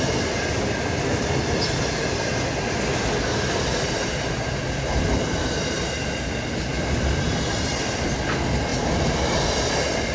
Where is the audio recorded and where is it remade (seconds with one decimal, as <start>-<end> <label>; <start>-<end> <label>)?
0.0-10.1 recorded